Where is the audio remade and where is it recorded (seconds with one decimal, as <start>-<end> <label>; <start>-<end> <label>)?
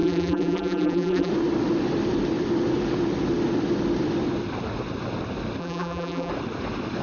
0.0-1.3 remade; 1.3-5.6 recorded; 5.6-6.3 remade; 6.3-7.0 recorded